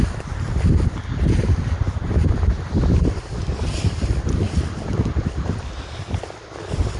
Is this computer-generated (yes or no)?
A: no